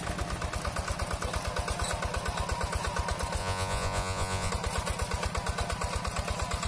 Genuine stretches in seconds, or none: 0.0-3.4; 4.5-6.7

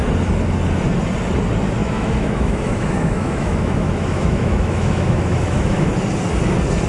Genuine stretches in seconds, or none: 0.0-1.8; 5.9-6.9

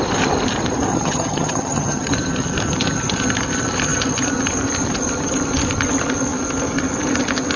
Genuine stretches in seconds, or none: 0.0-0.9; 2.1-7.6

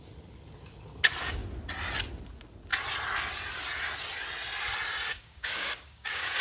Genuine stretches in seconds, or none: 0.0-5.1

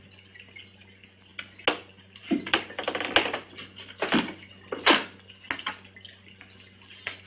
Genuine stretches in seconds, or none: 0.0-7.3